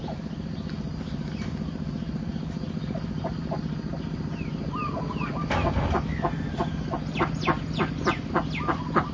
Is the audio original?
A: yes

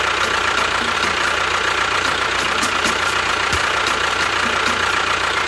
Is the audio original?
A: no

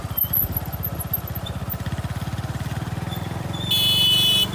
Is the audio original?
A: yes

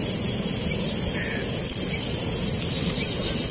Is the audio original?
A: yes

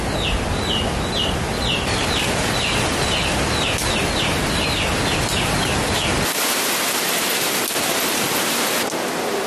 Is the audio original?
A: yes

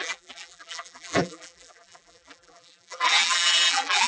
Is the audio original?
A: no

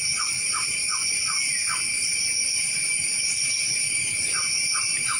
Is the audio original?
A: no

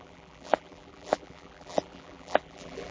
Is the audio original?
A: no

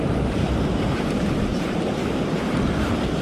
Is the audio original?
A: no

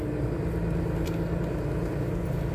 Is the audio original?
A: yes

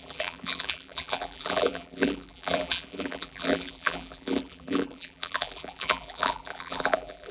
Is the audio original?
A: no